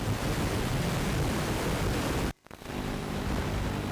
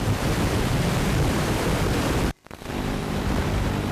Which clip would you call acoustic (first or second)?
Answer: first